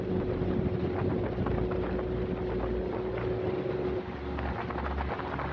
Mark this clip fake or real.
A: real